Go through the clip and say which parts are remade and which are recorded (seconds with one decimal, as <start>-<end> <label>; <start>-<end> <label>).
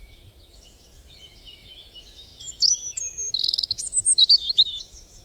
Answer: 0.0-5.2 remade